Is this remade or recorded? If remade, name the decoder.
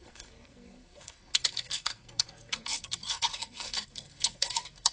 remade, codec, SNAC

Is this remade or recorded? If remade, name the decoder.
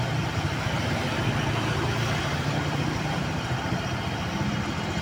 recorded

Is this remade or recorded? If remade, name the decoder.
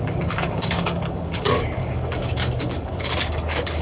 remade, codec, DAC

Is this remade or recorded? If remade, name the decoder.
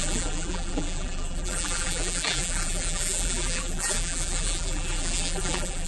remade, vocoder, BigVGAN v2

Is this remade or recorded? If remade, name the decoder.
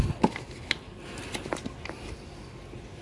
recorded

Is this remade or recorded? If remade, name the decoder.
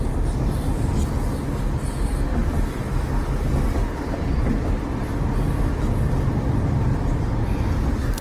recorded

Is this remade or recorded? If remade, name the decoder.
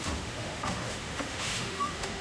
remade, autoencoder, DAC-VAE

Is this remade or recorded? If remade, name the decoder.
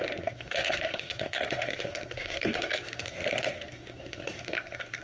remade, codec, SNAC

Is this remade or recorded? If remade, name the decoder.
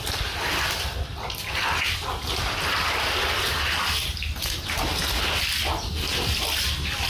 recorded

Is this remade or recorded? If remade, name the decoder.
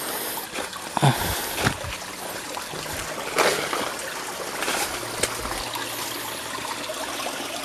recorded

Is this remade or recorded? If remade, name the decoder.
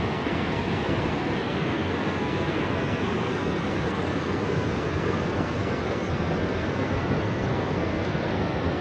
remade, codec, SNAC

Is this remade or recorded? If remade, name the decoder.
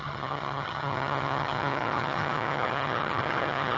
remade, vocoder, HiFi-GAN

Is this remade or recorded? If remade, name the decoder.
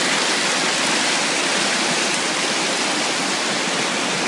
recorded